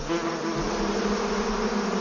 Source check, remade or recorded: recorded